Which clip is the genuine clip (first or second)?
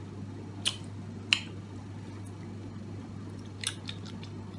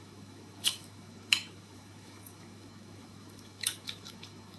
first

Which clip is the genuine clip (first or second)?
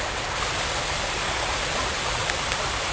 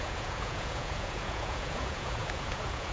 first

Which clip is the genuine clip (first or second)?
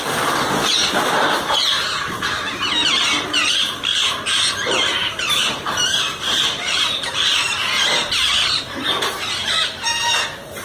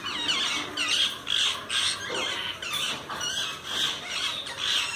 second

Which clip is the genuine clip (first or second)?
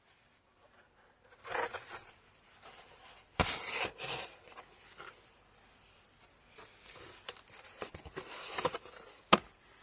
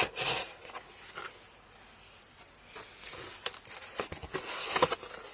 second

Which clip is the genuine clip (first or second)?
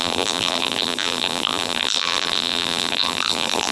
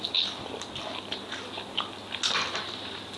second